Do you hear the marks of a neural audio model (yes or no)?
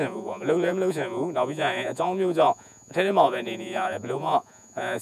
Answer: yes